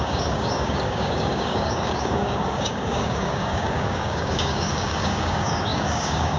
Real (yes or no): no